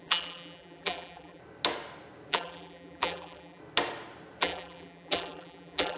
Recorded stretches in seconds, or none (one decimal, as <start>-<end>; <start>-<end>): 1.4-2.3; 3.6-4.4